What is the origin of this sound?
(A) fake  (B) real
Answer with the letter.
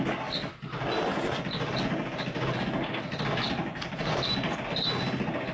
B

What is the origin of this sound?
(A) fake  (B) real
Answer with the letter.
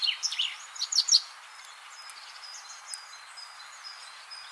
B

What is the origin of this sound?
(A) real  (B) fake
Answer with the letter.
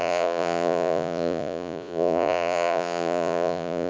B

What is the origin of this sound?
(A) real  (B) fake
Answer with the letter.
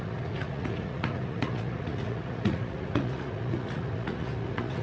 B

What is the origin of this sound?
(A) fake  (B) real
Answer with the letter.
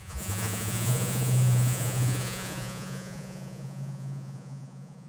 A